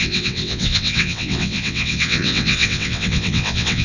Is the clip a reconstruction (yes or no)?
yes